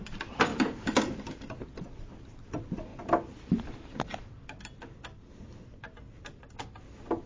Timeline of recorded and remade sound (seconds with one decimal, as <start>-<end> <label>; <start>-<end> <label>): 0.0-7.3 recorded